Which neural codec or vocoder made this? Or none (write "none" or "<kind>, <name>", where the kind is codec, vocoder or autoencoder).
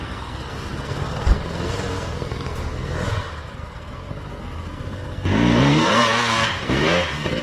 codec, SNAC